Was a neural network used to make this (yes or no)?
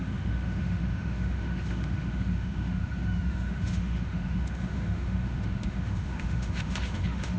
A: yes